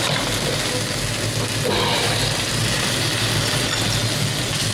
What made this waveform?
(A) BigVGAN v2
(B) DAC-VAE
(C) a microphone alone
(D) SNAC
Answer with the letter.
C